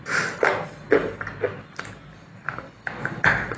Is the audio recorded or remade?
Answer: recorded